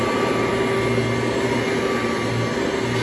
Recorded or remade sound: recorded